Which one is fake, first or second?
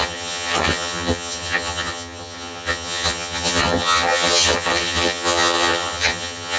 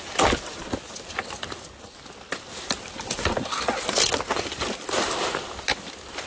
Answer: first